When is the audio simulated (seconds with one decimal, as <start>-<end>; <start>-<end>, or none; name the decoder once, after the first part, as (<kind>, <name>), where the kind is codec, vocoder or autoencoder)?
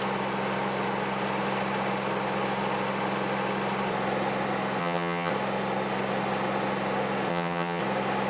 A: 4.8-5.3 (vocoder, HiFi-GAN); 7.3-7.8